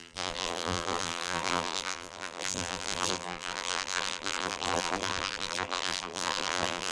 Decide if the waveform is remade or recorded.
remade